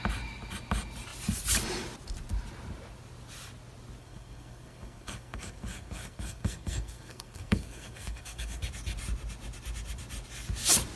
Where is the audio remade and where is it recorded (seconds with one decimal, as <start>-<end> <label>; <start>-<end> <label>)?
0.0-4.0 recorded; 4.0-8.6 remade; 8.6-10.9 recorded

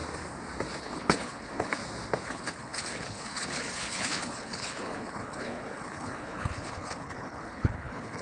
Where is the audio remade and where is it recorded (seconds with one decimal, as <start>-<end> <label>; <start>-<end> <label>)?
0.0-0.8 recorded; 0.8-1.8 remade; 1.8-2.3 recorded; 2.3-8.2 remade

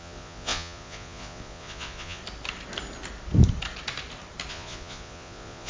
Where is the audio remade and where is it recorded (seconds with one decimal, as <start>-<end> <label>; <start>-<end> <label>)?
0.0-2.2 remade; 2.2-4.5 recorded; 4.5-5.7 remade

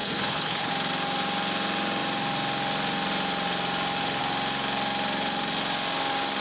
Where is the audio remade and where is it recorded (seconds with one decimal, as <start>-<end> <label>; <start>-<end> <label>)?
0.0-0.7 remade; 0.7-6.4 recorded

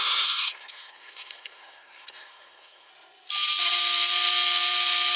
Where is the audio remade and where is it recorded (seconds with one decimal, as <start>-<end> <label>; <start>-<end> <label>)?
0.0-2.9 remade; 2.9-5.2 recorded

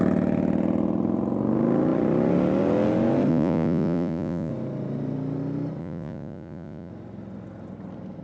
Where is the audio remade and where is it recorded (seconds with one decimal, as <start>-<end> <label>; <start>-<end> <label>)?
0.0-3.3 recorded; 3.3-4.5 remade; 4.5-5.8 recorded; 5.8-6.9 remade; 6.9-8.2 recorded